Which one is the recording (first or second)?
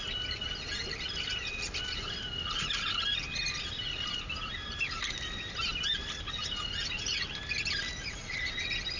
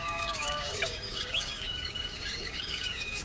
first